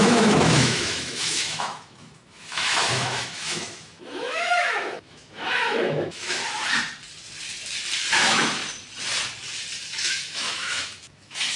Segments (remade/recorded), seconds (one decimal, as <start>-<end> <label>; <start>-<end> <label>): 0.0-6.4 remade; 6.4-8.1 recorded; 8.1-8.6 remade; 8.6-9.8 recorded; 9.8-11.6 remade